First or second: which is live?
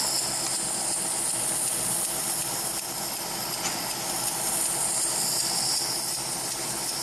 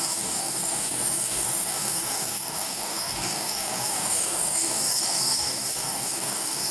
first